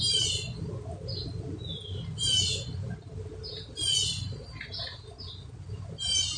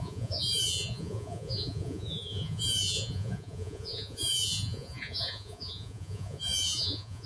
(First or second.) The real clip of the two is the first